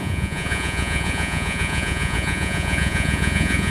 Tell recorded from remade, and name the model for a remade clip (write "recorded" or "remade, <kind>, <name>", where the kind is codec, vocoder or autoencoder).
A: remade, vocoder, Vocos